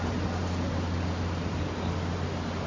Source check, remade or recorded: recorded